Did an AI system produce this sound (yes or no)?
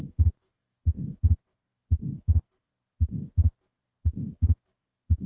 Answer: yes